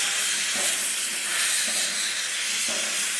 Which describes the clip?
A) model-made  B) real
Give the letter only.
B